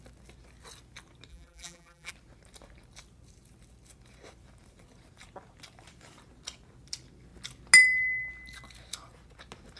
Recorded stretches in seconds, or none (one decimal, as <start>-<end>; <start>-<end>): 0.0-1.3; 2.1-9.8